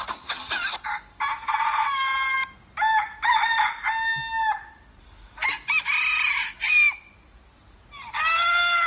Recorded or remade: recorded